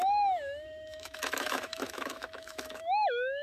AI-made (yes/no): yes